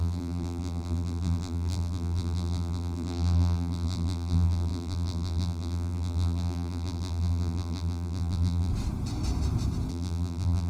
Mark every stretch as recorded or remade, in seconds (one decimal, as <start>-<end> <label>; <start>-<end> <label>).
0.0-8.7 remade; 8.7-9.9 recorded; 9.9-10.7 remade